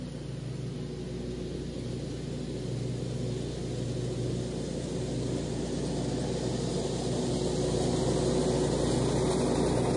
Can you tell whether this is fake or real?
real